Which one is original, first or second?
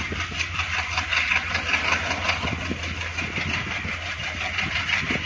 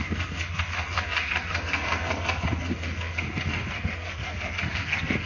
first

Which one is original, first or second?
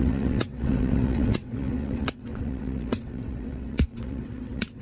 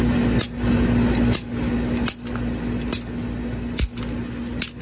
second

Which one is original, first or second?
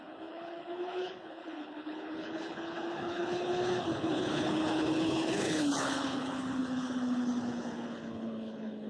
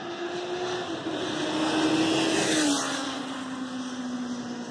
second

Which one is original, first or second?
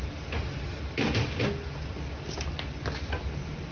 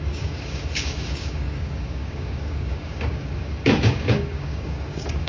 first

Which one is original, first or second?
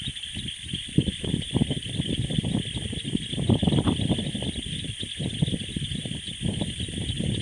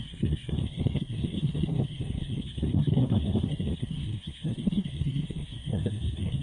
first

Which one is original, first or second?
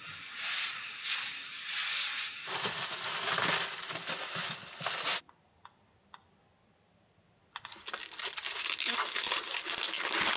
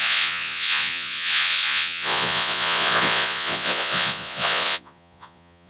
first